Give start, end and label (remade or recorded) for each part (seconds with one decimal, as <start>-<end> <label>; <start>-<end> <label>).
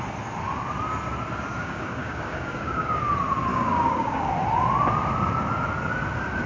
0.0-1.6 recorded; 1.6-3.0 remade; 3.0-3.5 recorded; 3.5-4.3 remade; 4.3-6.5 recorded